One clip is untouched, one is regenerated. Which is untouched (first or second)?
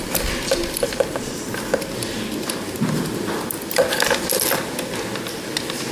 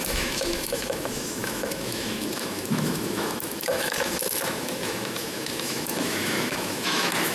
first